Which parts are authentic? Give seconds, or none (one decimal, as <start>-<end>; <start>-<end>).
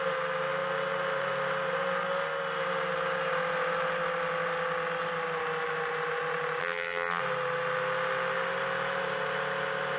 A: 0.0-6.6; 7.2-10.0